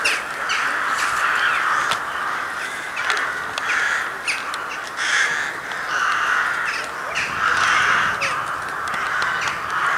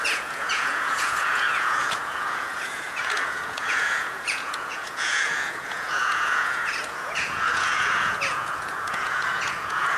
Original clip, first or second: first